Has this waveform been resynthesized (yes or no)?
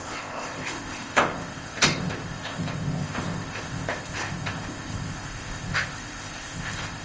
yes